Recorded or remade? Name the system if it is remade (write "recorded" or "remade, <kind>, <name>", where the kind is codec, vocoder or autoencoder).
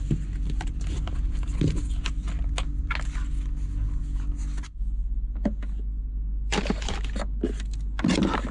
recorded